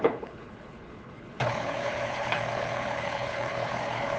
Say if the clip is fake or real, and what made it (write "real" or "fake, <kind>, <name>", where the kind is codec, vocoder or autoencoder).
fake, codec, HILCodec